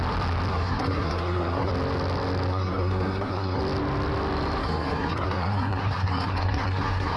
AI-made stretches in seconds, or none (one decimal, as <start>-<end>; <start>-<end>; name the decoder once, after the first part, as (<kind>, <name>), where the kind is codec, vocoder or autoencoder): 0.5-1.7 (codec, SNAC); 2.5-3.6; 4.6-7.2